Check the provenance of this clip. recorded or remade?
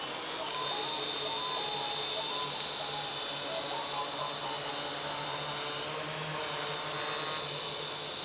recorded